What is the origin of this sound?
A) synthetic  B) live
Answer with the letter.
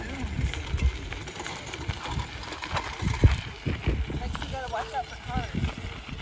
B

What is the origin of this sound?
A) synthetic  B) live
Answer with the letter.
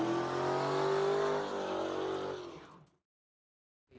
B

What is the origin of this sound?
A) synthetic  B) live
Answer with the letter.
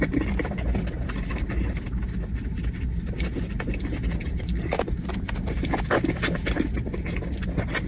B